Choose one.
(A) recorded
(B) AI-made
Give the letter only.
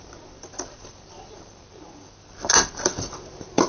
B